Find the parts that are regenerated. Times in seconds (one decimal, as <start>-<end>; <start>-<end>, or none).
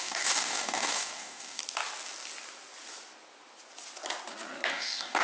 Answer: 0.0-1.6; 4.7-5.2